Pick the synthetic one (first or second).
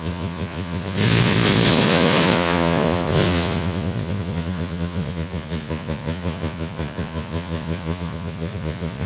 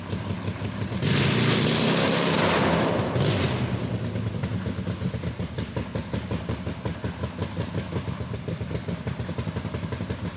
first